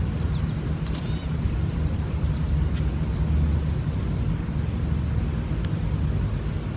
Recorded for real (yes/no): yes